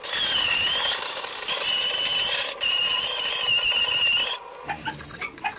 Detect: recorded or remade recorded